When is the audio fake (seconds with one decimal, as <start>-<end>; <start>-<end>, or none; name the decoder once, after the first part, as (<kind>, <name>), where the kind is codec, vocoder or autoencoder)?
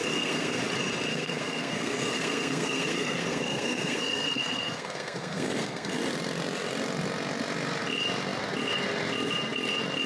0.0-0.6 (codec, SNAC); 1.1-6.0